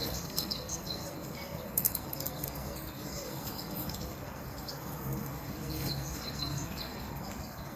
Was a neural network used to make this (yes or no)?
yes